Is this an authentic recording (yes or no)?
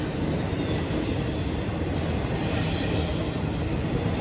yes